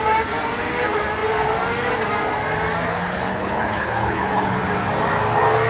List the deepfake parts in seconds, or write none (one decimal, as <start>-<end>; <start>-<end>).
2.9-4.6